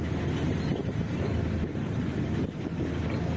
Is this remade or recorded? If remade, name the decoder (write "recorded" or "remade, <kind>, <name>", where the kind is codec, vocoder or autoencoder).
recorded